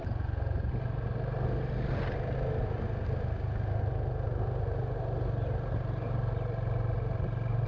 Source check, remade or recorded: recorded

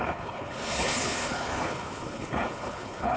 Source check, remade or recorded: remade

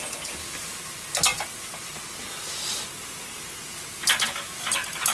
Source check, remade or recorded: recorded